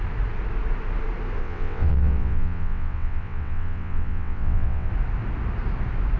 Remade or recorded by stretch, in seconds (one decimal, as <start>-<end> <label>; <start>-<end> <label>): 0.0-1.4 recorded; 1.4-4.9 remade; 4.9-6.2 recorded